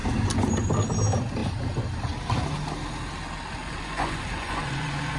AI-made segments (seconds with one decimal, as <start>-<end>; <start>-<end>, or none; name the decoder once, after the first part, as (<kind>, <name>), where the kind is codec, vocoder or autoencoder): 3.6-5.2 (vocoder, Vocos)